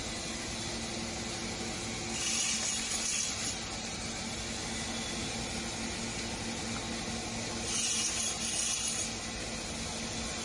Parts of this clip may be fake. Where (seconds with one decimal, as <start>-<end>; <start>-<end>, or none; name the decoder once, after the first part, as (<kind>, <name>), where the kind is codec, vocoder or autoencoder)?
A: none